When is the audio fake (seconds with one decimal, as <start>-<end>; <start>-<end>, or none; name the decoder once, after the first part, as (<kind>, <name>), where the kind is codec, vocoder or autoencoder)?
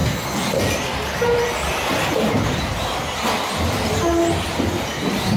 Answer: none